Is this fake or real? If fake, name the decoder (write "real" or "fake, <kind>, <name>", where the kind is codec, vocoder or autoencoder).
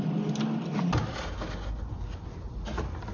real